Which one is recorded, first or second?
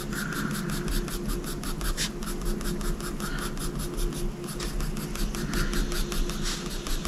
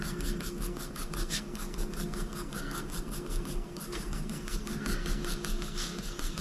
first